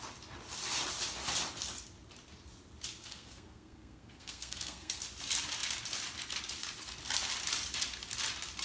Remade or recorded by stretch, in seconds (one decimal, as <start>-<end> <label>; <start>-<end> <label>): 0.0-3.0 recorded; 3.0-5.0 remade; 5.0-8.6 recorded